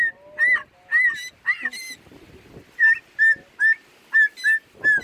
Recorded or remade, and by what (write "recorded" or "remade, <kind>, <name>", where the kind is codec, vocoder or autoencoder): recorded